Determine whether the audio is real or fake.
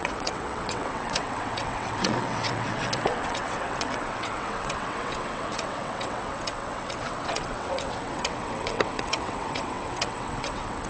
fake